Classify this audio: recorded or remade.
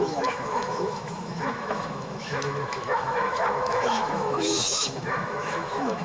remade